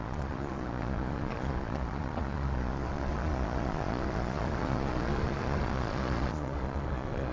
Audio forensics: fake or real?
fake